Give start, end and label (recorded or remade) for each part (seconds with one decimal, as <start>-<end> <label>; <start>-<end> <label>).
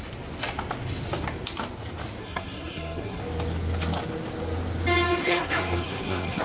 0.0-2.2 recorded; 2.2-3.2 remade; 3.2-5.2 recorded; 5.2-6.4 remade